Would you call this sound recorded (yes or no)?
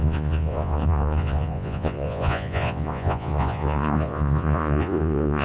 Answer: no